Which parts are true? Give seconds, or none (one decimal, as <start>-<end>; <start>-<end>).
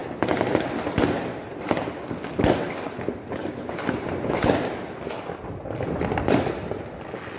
0.0-7.4